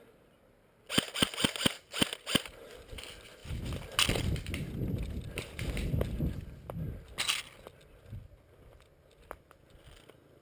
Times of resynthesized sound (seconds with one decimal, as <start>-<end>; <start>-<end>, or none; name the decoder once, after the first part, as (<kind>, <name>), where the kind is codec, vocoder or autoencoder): none